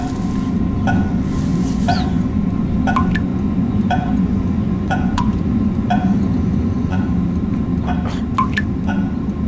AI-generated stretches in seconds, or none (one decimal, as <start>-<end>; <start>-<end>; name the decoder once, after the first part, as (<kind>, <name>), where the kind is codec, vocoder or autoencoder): 1.5-2.4 (vocoder, Vocos); 3.3-7.1